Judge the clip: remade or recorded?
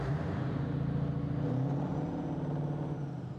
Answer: recorded